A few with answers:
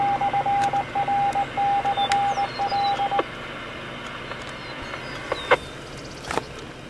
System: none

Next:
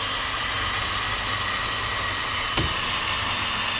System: none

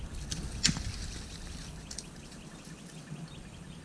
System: none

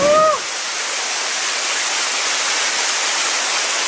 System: none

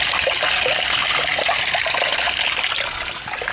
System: none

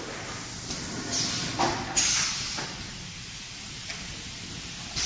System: none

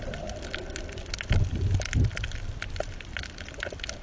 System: none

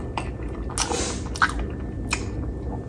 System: none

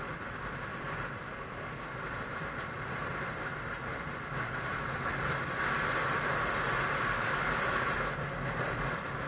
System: none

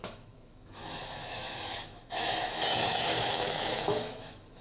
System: autoencoder, DAC-VAE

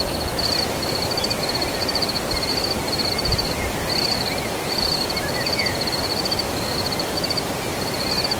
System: none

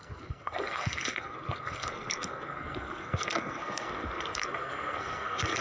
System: codec, SNAC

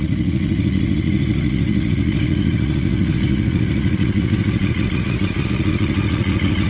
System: vocoder, Vocos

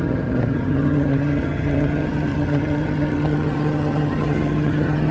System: vocoder, HiFi-GAN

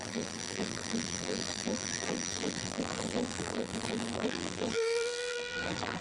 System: vocoder, BigVGAN v2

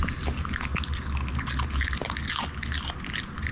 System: none